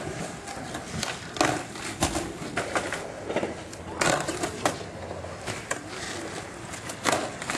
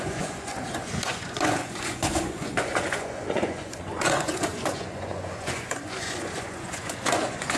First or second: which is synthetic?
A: second